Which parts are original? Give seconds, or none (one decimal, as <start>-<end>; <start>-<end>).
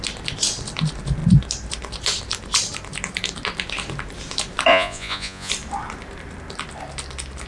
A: 0.0-4.7; 5.5-7.5